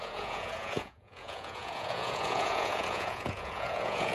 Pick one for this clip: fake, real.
fake